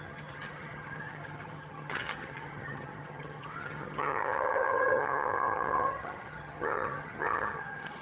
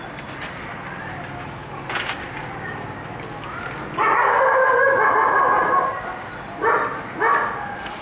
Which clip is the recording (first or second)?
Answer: second